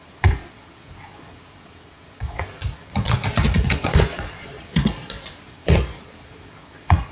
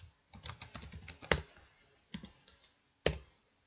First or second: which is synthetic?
first